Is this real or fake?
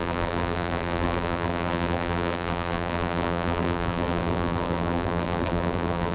fake